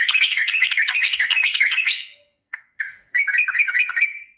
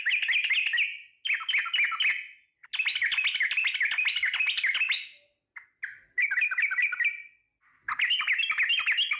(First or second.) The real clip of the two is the second